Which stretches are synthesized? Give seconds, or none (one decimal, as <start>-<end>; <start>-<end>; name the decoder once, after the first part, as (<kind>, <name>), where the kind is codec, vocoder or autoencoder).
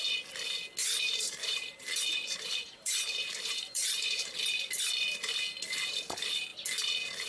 0.8-4.7 (vocoder, BigVGAN v2)